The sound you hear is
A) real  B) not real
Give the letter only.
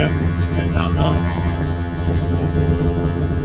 B